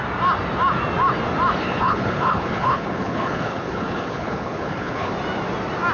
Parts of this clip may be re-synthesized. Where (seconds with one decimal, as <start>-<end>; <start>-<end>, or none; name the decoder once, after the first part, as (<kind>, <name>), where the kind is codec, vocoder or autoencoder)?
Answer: 1.6-5.1 (codec, HILCodec)